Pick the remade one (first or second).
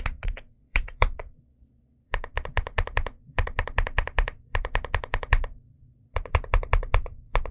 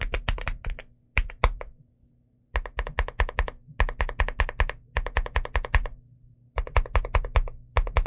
first